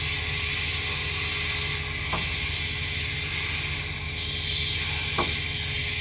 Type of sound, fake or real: real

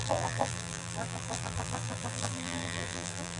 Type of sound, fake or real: fake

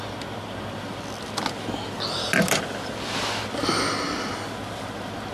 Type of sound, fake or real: real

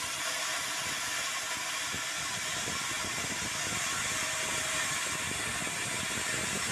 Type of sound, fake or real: real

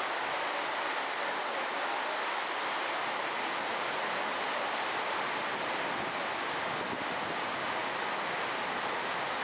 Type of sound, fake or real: real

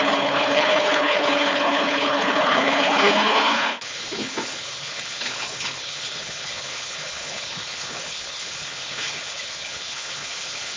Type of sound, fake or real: fake